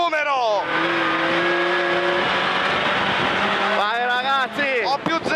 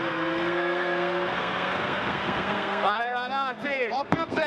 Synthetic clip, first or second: second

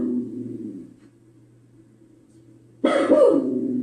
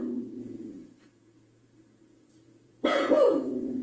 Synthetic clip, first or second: second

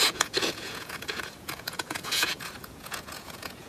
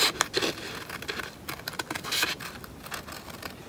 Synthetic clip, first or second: first